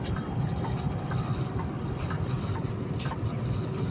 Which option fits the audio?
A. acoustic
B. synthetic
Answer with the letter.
A